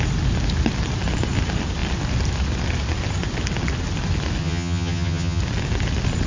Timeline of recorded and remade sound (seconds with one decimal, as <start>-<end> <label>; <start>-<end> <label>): 0.0-4.4 recorded; 4.4-5.4 remade; 5.4-6.3 recorded